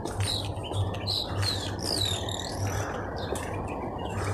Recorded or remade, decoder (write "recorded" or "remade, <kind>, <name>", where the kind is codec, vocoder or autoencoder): recorded